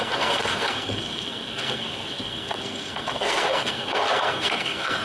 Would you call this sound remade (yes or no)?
yes